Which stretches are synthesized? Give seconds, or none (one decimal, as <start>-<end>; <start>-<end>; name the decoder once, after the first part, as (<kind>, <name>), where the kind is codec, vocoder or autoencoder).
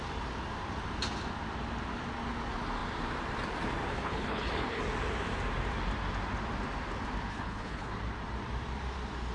3.9-4.8 (codec, HILCodec); 7.3-7.9